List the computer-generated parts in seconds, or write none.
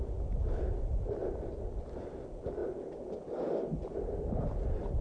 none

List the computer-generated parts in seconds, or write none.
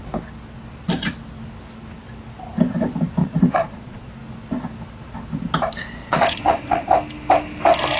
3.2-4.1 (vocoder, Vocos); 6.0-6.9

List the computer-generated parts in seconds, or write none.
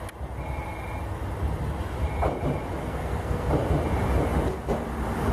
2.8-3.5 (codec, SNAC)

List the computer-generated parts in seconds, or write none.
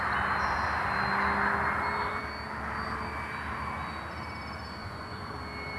4.8-5.3 (vocoder, Vocos)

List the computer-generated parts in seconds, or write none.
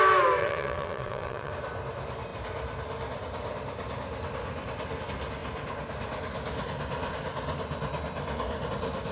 0.4-1.5 (vocoder, WaveNeXt)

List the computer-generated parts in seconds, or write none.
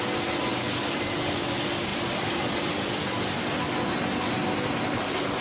none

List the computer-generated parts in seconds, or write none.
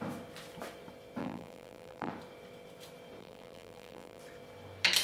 1.2-2.1 (vocoder, BigVGAN v2); 3.2-4.2